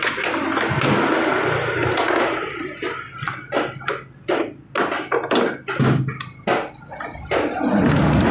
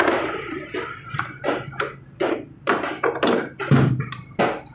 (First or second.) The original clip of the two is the first